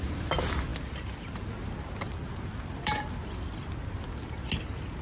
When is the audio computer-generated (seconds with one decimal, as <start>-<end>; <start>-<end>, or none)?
none